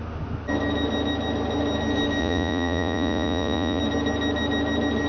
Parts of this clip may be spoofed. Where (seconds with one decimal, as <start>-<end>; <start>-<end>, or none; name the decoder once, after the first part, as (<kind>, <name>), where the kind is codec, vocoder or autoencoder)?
2.2-3.8 (vocoder, Vocos)